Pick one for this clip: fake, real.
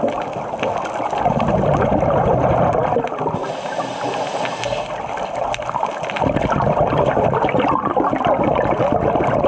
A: real